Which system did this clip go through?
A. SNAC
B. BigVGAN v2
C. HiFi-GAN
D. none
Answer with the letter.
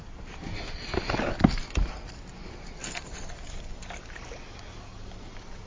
D